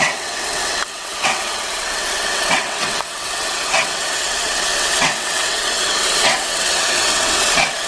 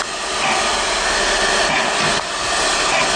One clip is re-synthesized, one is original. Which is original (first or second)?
second